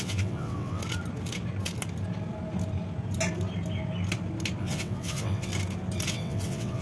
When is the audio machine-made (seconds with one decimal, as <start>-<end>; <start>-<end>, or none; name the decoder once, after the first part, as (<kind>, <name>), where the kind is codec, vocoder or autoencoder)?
0.0-0.8 (vocoder, WaveNeXt); 4.6-5.5; 6.1-6.8